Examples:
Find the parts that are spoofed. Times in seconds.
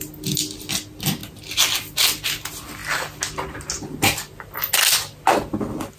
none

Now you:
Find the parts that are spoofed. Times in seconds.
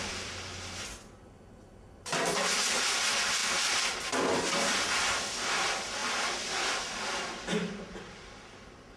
0.0-9.0 (vocoder, BigVGAN v2)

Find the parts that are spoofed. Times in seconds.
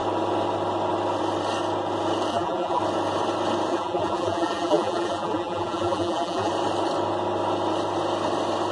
2.3-2.8 (vocoder, BigVGAN v2); 3.7-6.5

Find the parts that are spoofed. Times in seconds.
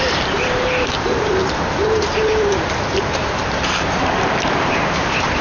0.0-5.4 (vocoder, BigVGAN v2)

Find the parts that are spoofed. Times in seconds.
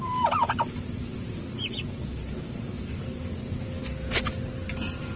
0.0-2.7 (vocoder, BigVGAN v2)